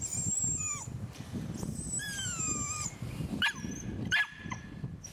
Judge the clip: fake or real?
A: fake